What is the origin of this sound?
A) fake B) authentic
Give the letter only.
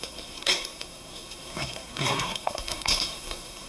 A